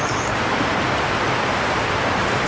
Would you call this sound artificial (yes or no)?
no